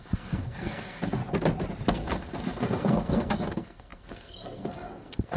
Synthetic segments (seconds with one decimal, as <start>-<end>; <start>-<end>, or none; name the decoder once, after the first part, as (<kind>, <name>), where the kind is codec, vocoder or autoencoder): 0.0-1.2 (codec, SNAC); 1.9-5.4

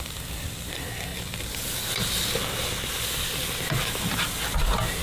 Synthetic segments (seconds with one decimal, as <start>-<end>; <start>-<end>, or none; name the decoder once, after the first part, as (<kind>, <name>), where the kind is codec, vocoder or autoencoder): none

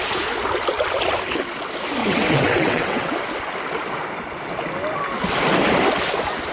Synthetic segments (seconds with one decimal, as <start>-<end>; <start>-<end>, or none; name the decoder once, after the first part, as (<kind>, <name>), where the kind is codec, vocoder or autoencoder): 2.0-3.1 (vocoder, WaveNeXt)

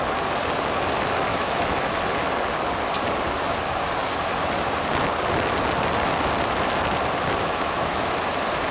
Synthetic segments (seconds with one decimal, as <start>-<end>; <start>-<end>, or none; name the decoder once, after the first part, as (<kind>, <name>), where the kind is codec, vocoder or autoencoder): 1.3-1.9 (autoencoder, DAC-VAE); 7.4-8.2

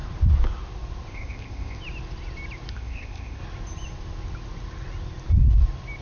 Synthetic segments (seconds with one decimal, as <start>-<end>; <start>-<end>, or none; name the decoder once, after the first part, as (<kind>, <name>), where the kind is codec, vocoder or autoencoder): 1.1-1.8 (codec, ZipCodec); 2.7-3.4

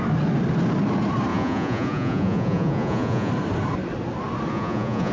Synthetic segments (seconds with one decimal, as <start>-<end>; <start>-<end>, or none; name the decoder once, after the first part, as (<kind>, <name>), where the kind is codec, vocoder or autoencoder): 1.3-3.3 (vocoder, Vocos); 4.5-5.1

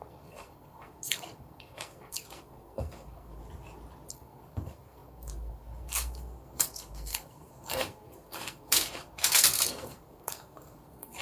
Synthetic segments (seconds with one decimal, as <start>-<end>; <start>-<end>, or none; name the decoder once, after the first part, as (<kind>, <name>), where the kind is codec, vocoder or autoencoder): 0.0-3.4 (codec, SNAC); 4.1-11.2

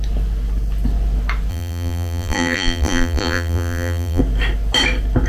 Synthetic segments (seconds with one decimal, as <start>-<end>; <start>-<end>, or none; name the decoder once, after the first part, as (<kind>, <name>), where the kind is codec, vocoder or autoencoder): 1.5-4.2 (vocoder, BigVGAN v2)